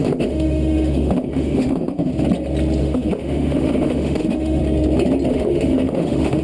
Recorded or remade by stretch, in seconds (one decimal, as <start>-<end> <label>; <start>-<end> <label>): 0.0-2.1 remade; 2.1-2.8 recorded; 2.8-4.6 remade; 4.6-5.3 recorded; 5.3-6.4 remade